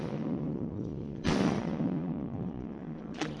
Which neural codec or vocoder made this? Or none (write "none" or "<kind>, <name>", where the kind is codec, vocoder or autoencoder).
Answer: vocoder, Vocos